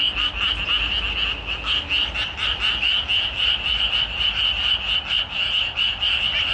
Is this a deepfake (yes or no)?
no